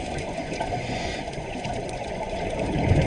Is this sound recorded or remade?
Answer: remade